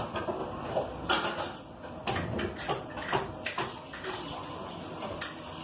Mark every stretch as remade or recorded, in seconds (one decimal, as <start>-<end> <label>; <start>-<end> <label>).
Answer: 0.0-5.6 recorded